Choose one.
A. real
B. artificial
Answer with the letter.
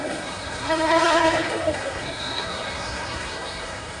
B